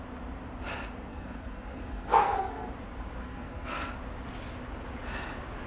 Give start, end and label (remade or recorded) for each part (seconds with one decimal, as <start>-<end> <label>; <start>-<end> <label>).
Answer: 0.0-1.1 recorded; 1.1-2.7 remade; 2.7-3.2 recorded; 3.2-3.9 remade; 3.9-5.7 recorded